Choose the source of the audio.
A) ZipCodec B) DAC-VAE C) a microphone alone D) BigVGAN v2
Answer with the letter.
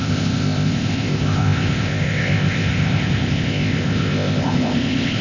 A